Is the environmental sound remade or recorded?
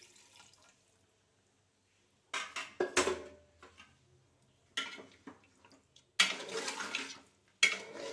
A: recorded